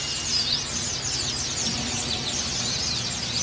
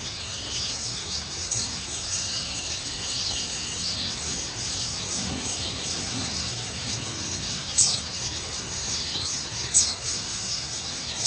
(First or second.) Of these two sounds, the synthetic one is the second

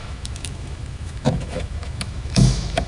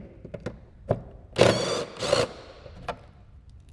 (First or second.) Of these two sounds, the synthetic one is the first